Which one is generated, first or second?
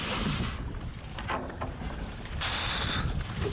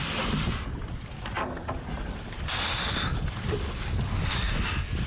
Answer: first